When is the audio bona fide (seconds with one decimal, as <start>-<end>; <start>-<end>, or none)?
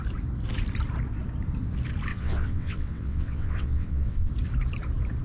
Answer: 0.0-2.1; 4.3-5.2